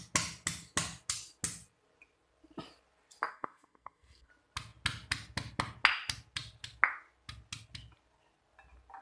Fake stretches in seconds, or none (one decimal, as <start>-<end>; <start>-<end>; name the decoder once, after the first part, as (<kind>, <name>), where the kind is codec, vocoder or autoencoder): 3.3-4.3 (codec, SNAC)